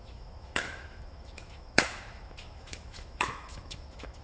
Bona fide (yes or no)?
no